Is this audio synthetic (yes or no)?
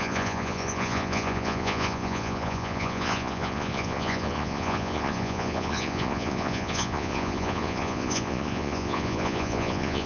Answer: yes